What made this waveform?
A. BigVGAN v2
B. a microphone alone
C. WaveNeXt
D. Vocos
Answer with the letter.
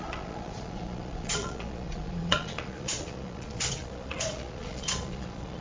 D